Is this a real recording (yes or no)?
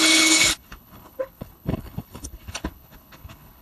no